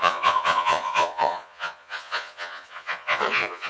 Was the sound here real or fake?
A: fake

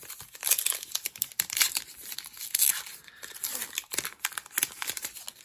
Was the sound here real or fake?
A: real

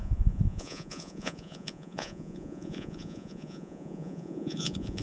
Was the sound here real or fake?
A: fake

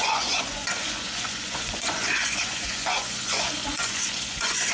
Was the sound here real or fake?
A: fake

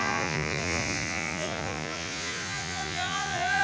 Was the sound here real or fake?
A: fake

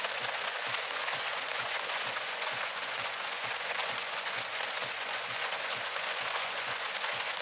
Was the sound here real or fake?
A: fake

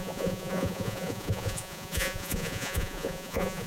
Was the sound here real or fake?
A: fake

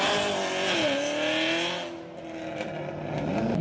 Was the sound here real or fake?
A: real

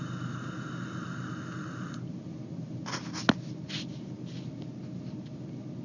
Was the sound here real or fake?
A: real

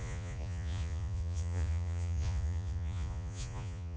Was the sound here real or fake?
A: fake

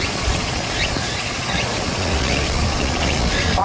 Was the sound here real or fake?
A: fake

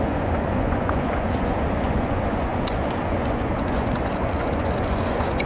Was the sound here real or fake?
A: fake